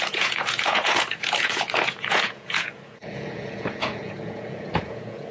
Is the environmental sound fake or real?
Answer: fake